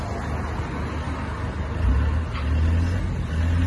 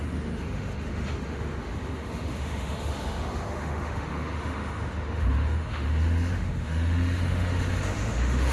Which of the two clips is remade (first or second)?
second